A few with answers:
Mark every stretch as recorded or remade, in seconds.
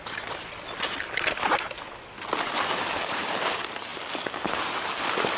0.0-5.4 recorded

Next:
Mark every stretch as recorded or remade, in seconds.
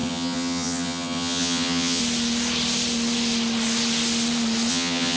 0.0-2.0 remade; 2.0-4.7 recorded; 4.7-5.2 remade